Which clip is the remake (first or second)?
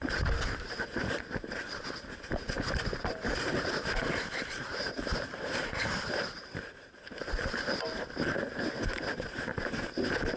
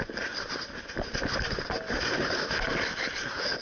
first